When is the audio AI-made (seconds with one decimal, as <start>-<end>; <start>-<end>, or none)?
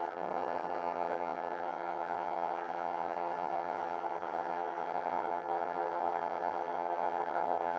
0.0-7.8